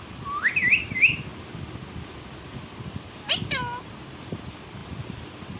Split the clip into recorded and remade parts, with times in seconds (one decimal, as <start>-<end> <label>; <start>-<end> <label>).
0.0-4.8 recorded; 4.8-5.6 remade